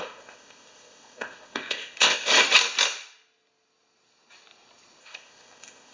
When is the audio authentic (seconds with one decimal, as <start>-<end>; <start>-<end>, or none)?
2.3-5.0